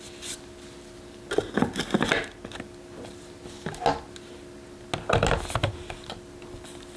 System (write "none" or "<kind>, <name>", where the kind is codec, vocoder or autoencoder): none